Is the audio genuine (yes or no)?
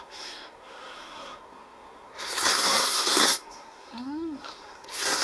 no